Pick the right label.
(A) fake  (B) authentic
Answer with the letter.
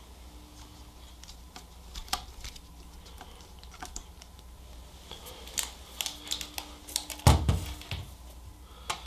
B